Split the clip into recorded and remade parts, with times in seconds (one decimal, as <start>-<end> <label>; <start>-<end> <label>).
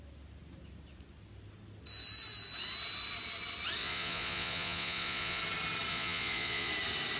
0.0-3.8 recorded; 3.8-5.4 remade; 5.4-5.9 recorded; 5.9-6.7 remade; 6.7-7.2 recorded